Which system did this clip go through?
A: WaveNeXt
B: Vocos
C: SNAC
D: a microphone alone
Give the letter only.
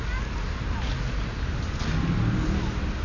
D